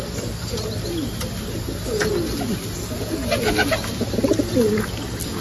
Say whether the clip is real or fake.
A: real